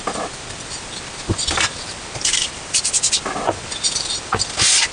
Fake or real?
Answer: fake